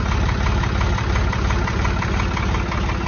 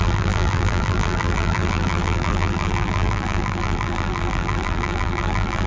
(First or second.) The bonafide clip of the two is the first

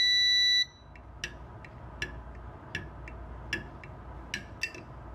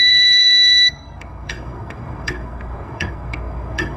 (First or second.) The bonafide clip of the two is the first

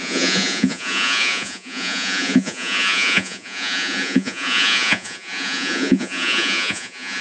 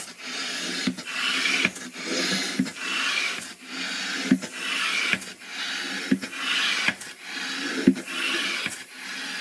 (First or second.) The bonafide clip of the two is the second